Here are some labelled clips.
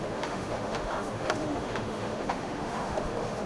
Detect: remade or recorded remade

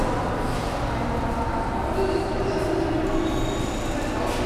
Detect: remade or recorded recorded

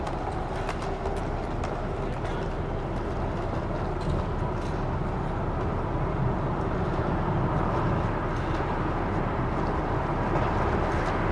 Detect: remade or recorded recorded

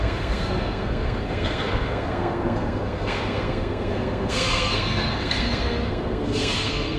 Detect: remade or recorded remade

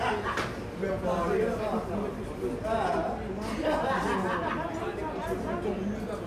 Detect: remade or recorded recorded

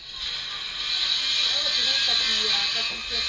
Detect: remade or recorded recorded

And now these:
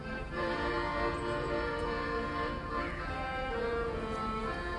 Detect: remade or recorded remade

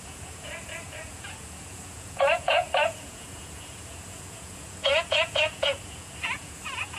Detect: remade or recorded remade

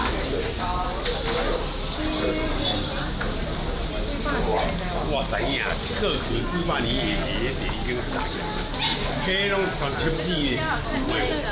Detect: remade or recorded recorded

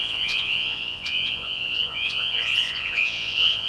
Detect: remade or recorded remade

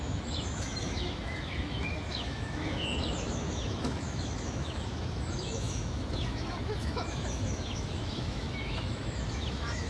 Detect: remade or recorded remade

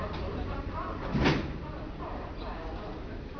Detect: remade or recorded recorded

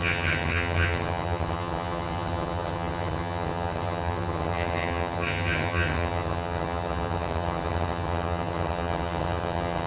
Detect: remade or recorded remade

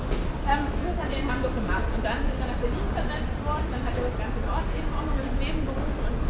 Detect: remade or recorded recorded